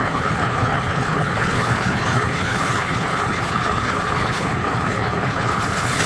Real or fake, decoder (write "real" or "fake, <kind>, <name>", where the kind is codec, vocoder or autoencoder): fake, codec, HILCodec